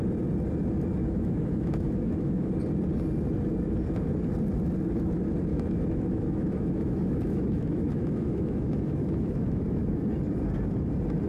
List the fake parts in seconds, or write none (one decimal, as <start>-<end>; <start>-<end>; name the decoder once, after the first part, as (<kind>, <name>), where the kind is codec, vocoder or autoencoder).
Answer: 1.0-2.5 (autoencoder, DAC-VAE); 5.5-10.1